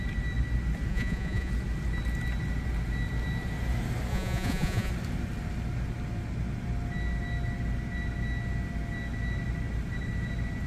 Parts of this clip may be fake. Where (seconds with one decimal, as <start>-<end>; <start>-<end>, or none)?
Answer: 0.9-1.5; 4.1-4.9